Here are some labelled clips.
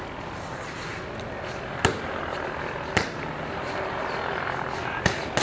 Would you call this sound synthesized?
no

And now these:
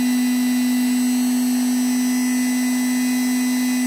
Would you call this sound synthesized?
no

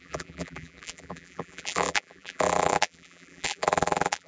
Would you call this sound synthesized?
yes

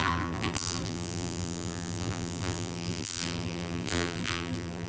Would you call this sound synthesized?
yes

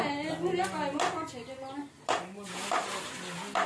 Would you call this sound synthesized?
no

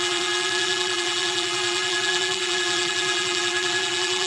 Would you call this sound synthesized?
yes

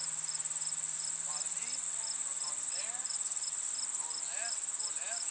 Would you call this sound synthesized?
no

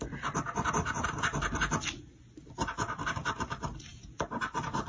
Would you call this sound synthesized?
yes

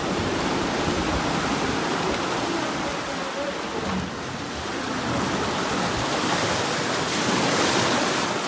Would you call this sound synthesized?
no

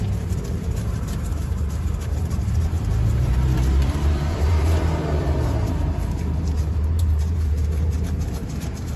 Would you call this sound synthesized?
yes